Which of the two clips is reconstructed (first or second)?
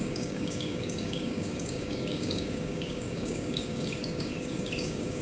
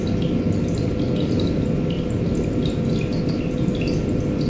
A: first